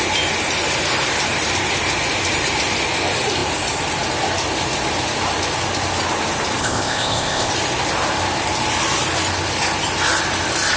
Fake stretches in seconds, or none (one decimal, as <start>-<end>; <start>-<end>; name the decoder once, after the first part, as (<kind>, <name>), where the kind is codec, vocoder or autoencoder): 6.6-7.5 (codec, ZipCodec)